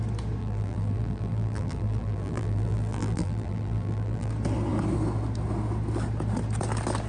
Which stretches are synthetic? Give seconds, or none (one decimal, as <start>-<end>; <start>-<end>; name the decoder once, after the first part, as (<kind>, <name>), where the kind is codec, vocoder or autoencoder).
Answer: 0.4-4.3 (vocoder, BigVGAN v2)